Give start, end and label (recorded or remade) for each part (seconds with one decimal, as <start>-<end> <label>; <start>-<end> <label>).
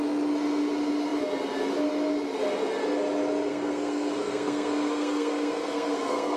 0.0-3.5 recorded; 3.5-6.4 remade